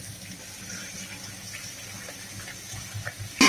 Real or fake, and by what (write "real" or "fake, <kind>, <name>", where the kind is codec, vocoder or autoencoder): real